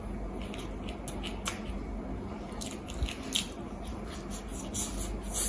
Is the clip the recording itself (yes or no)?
yes